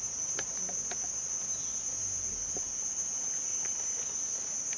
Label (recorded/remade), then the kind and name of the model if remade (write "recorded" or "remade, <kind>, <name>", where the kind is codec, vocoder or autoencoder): recorded